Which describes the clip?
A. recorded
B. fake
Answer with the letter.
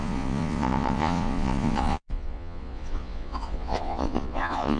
B